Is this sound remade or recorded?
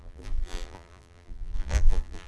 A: remade